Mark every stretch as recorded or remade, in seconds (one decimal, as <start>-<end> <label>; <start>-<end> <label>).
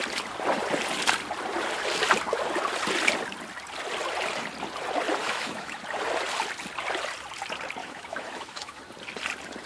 0.0-5.2 recorded; 5.2-5.8 remade; 5.8-7.8 recorded; 7.8-8.8 remade; 8.8-9.7 recorded